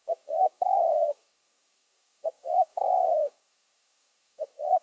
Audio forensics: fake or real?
fake